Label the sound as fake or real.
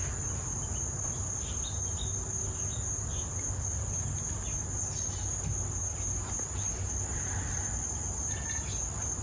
real